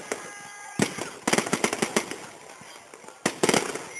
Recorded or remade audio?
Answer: recorded